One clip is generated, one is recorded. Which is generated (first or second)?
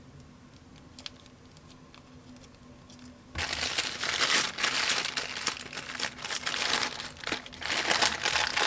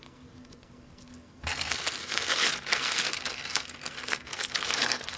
second